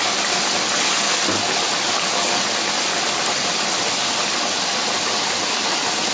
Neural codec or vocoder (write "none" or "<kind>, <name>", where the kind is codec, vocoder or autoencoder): none